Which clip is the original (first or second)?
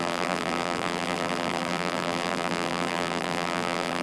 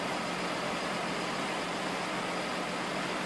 second